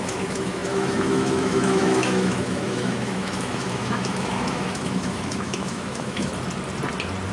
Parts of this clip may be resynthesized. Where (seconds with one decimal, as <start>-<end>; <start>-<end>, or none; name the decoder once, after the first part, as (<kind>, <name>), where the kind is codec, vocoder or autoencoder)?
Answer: 0.0-6.3 (autoencoder, DAC-VAE)